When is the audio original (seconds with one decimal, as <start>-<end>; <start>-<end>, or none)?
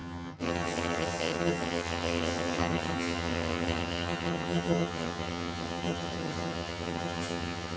none